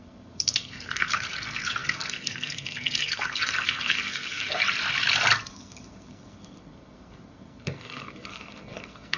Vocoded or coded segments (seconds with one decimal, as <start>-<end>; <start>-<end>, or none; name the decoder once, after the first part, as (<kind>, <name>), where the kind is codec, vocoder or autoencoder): 0.0-4.6 (codec, SNAC); 5.5-9.2